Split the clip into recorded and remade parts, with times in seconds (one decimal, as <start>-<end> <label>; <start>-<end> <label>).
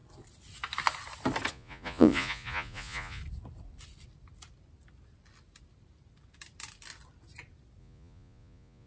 0.0-1.5 recorded; 1.5-3.2 remade; 3.2-7.8 recorded; 7.8-8.9 remade